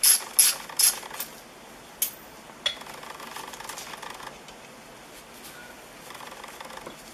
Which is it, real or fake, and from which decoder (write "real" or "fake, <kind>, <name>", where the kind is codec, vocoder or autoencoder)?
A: real